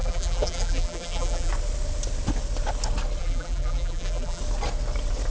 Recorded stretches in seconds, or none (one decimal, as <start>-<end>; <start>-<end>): 1.5-3.2; 4.4-5.3